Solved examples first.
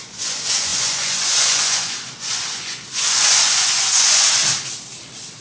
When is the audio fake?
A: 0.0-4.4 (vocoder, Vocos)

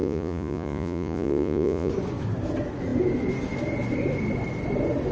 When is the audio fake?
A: 0.0-1.9 (vocoder, Vocos)

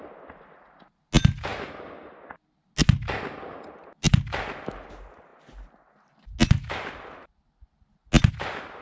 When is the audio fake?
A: none

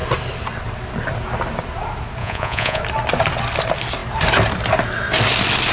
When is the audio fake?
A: 2.2-2.8 (vocoder, Vocos)

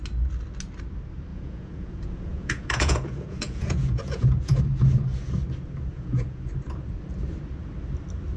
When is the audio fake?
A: 1.3-4.6 (vocoder, Vocos); 5.9-6.5

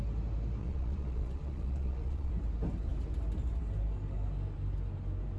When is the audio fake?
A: 0.6-2.3 (vocoder, Vocos)